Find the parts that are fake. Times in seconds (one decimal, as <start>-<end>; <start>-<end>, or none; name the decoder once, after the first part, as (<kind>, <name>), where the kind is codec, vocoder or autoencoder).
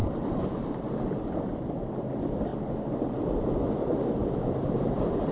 0.0-2.5 (vocoder, BigVGAN v2); 3.1-5.3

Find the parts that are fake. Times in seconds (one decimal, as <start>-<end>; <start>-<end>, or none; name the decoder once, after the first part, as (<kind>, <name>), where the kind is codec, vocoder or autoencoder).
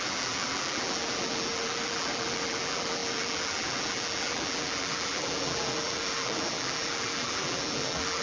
0.0-8.2 (vocoder, BigVGAN v2)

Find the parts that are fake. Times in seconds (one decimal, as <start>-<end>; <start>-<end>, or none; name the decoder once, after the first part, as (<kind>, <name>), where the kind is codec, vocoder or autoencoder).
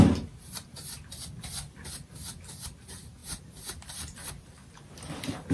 none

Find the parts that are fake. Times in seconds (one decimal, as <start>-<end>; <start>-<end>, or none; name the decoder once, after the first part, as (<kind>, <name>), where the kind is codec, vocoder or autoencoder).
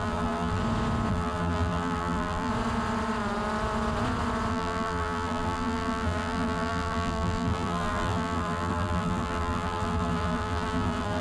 0.0-0.6 (vocoder, BigVGAN v2); 1.1-2.5; 4.5-11.2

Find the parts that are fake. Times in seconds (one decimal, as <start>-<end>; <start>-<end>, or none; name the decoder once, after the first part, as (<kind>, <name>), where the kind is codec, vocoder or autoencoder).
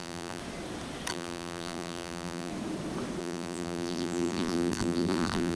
0.0-0.4 (vocoder, BigVGAN v2); 1.1-2.5; 3.2-5.6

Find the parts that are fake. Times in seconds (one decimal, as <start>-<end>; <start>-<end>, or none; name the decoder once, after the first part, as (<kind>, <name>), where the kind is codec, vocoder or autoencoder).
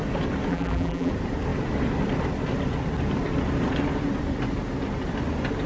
0.5-1.1 (vocoder, BigVGAN v2)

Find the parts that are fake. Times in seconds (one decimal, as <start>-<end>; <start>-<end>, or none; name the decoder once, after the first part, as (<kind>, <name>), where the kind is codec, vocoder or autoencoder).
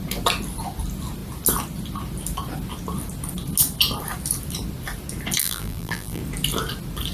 5.4-6.2 (vocoder, BigVGAN v2)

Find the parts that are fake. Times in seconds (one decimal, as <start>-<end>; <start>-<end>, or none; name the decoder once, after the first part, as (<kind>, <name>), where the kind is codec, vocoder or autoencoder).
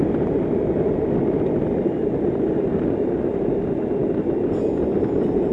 none